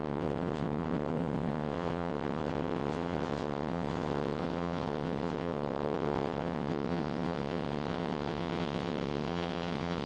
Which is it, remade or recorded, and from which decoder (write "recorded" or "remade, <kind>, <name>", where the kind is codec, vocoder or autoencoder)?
remade, vocoder, WaveNeXt